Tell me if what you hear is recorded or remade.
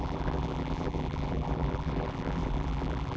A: remade